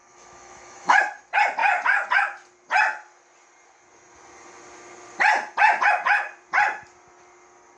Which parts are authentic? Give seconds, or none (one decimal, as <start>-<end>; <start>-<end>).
1.0-7.8